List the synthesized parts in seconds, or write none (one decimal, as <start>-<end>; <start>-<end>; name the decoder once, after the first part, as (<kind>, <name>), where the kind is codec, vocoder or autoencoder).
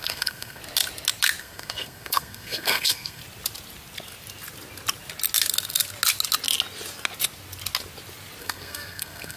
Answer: 0.0-0.6 (codec, SNAC); 1.4-3.2; 8.4-9.4